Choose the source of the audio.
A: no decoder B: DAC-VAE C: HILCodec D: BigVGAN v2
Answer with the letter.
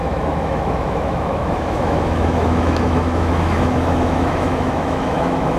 B